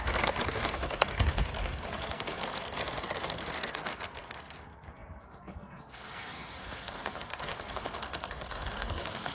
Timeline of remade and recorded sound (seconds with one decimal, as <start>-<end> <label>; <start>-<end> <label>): 0.0-9.3 remade